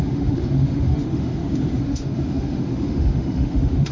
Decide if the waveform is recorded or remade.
remade